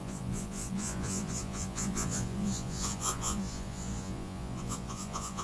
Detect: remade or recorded remade